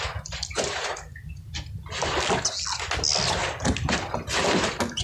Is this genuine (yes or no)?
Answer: yes